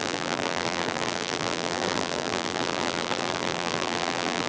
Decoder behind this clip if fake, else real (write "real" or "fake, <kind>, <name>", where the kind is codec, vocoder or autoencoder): fake, vocoder, BigVGAN v2